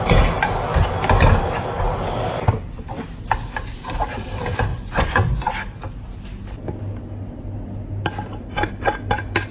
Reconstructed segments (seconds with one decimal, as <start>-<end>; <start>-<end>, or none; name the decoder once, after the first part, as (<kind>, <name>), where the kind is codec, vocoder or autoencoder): 4.7-5.5 (vocoder, Vocos)